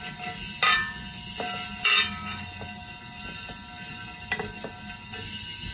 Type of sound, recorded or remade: recorded